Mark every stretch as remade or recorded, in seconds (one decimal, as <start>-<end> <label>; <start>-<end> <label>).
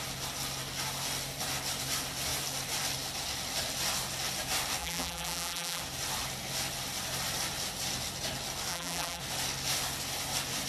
0.0-4.8 recorded; 4.8-5.8 remade; 5.8-8.7 recorded; 8.7-9.2 remade; 9.2-10.7 recorded